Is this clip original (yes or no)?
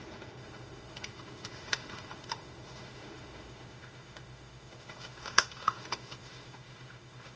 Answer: no